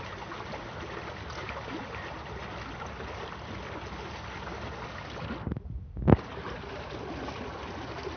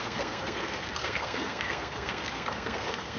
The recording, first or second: first